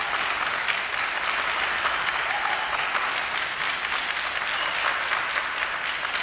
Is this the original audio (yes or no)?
yes